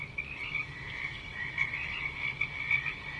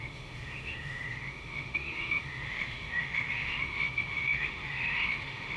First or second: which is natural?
first